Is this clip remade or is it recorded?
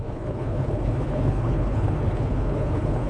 remade